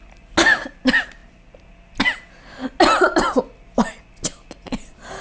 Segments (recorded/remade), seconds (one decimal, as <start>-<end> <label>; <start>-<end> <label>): 0.0-5.2 recorded

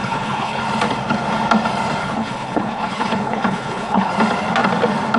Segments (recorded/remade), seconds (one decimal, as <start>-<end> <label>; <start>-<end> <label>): 0.0-0.6 remade; 0.6-2.0 recorded; 2.0-4.1 remade; 4.1-5.2 recorded